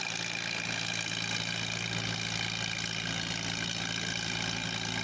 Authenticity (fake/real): real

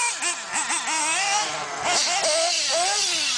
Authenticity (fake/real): real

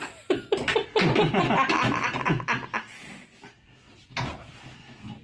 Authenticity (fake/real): real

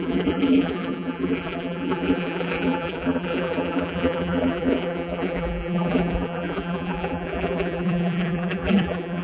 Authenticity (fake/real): fake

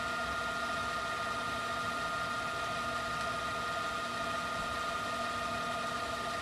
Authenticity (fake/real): real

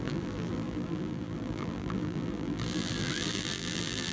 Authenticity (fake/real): fake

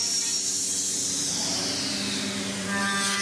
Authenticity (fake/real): fake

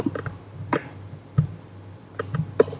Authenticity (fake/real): real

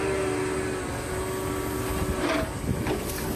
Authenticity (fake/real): real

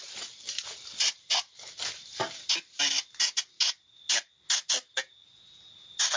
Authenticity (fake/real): real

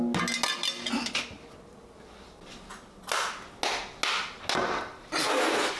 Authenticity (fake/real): real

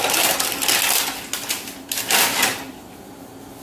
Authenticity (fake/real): real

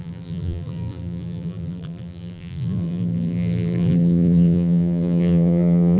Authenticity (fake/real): fake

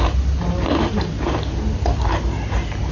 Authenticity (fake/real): fake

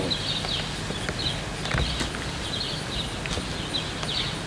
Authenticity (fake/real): real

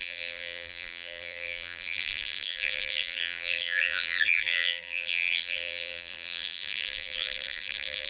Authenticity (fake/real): fake